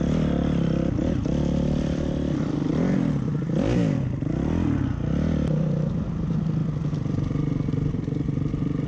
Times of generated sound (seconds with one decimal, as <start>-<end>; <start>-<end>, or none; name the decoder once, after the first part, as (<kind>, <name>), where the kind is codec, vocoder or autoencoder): none

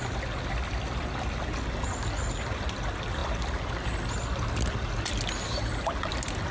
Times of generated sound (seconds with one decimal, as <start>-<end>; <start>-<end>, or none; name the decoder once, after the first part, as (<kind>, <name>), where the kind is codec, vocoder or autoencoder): none